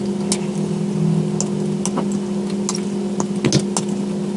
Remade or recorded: recorded